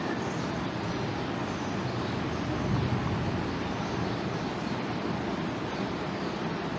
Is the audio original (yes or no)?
yes